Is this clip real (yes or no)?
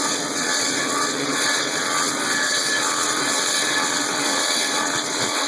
no